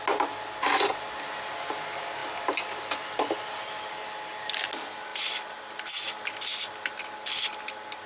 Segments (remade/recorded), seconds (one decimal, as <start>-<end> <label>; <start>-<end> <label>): 0.0-8.1 recorded